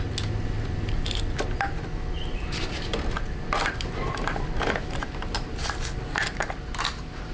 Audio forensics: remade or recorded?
recorded